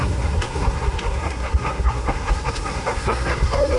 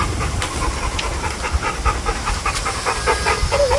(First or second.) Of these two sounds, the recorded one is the second